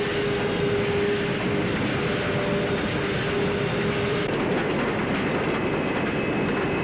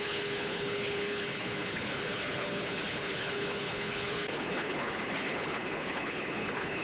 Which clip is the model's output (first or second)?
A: second